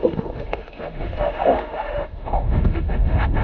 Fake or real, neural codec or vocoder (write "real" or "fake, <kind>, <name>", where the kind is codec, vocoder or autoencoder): fake, autoencoder, DAC-VAE